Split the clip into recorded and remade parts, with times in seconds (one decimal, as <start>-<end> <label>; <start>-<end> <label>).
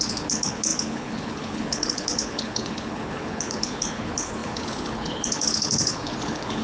0.0-6.6 remade